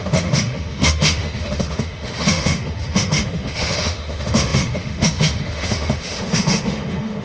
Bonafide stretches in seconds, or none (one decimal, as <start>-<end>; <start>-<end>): none